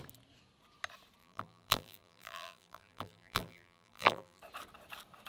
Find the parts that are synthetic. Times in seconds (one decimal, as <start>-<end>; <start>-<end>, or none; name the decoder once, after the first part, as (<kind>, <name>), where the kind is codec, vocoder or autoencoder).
1.2-4.4 (vocoder, BigVGAN v2)